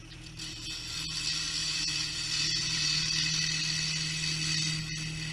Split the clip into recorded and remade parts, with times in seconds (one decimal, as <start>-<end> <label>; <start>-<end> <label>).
0.0-1.6 recorded; 1.6-3.0 remade; 3.0-5.3 recorded